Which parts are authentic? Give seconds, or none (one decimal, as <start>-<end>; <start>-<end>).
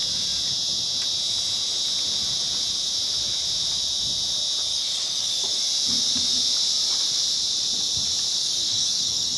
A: 0.0-4.7; 5.6-8.4